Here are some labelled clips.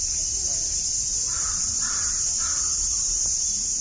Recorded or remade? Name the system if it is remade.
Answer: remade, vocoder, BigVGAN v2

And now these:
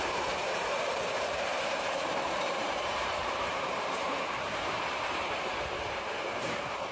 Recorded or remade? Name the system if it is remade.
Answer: remade, vocoder, BigVGAN v2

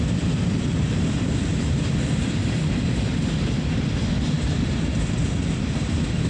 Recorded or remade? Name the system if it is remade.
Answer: remade, vocoder, BigVGAN v2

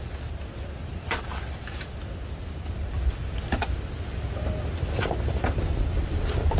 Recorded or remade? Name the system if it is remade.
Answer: recorded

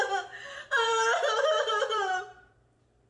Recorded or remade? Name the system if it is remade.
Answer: remade, vocoder, BigVGAN v2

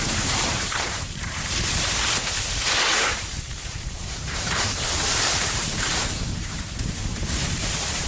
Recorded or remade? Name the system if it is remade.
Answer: remade, vocoder, BigVGAN v2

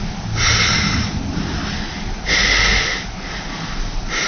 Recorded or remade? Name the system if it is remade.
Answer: recorded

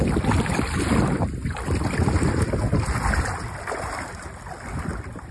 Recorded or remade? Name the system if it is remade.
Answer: recorded